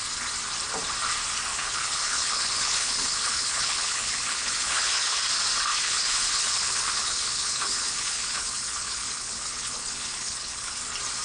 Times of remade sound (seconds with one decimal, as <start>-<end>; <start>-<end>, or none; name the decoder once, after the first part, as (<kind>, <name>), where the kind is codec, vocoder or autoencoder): 1.5-5.2 (codec, HILCodec); 5.7-10.7